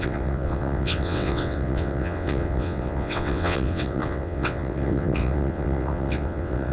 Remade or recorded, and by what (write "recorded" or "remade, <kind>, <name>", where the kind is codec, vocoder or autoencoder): remade, vocoder, WaveNeXt